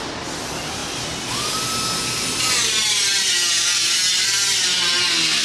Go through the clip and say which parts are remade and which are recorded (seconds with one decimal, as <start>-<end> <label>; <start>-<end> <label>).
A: 0.0-5.4 recorded